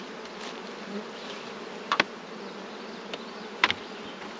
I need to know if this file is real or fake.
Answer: real